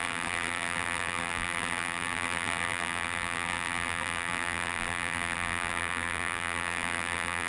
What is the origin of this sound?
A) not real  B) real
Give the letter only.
A